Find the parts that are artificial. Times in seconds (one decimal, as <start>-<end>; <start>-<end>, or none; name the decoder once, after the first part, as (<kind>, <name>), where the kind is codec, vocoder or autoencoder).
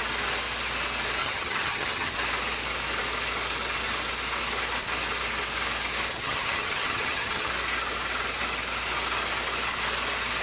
1.2-2.1 (vocoder, HiFi-GAN); 6.1-7.5